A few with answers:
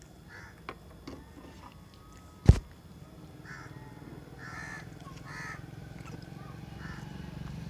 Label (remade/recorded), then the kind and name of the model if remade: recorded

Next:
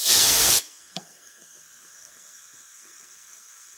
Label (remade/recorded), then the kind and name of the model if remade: remade, codec, SNAC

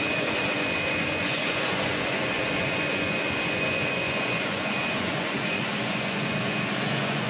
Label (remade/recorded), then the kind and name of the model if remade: remade, vocoder, Vocos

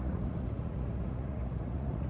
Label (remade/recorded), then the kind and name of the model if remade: remade, vocoder, Vocos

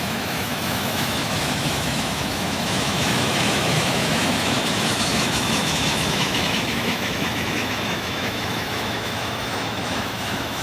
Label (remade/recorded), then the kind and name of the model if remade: remade, autoencoder, DAC-VAE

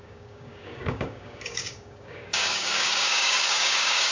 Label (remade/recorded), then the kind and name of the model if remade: remade, codec, DAC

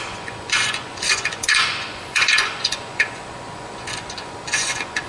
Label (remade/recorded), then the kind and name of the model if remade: remade, vocoder, Vocos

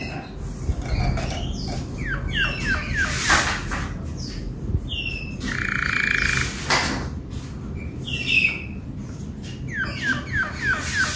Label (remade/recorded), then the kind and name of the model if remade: recorded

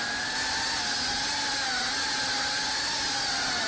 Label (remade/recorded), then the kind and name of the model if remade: recorded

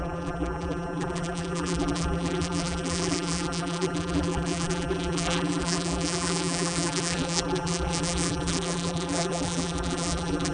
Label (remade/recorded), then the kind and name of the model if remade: remade, vocoder, BigVGAN v2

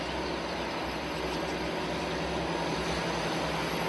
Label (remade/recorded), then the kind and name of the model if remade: recorded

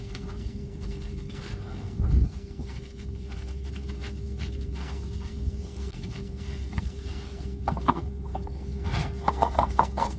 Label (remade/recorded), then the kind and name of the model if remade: remade, codec, SNAC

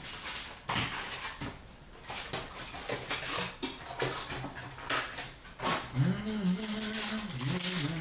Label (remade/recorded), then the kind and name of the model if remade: recorded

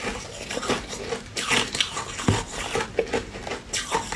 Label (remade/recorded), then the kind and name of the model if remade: remade, vocoder, BigVGAN v2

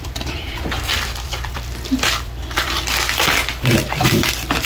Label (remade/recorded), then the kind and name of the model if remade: remade, vocoder, BigVGAN v2